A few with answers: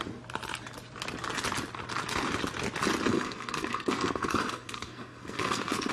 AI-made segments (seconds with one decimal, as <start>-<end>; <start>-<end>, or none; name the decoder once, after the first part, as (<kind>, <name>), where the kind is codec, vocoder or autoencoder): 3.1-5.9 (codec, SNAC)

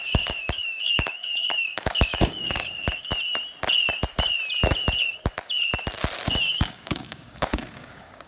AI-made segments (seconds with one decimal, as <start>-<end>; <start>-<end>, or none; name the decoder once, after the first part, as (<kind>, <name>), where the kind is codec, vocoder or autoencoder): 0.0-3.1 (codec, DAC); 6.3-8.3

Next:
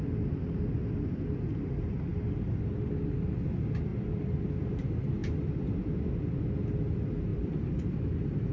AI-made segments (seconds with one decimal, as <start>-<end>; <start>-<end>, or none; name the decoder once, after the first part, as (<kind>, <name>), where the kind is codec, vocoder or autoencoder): 3.9-4.5 (vocoder, BigVGAN v2); 7.3-8.0

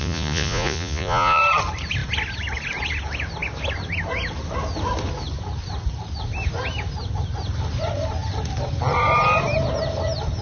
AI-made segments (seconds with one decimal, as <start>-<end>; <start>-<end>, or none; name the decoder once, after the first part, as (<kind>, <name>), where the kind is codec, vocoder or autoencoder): 0.0-1.4 (vocoder, Vocos)